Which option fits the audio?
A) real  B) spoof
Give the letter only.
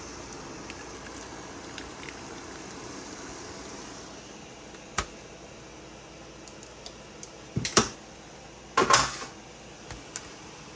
A